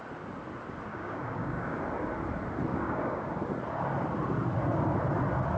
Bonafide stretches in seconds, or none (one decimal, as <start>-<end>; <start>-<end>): 0.0-0.9; 1.8-2.7; 3.3-5.6